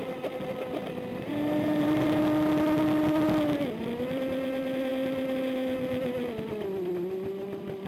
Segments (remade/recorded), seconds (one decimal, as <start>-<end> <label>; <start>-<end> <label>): 0.0-1.1 recorded; 1.1-2.2 remade; 2.2-7.9 recorded